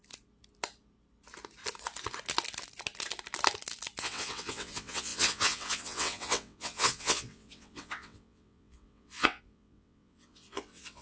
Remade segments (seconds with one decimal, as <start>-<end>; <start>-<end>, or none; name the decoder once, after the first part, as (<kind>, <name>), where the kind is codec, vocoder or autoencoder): 4.0-11.0 (vocoder, WaveNeXt)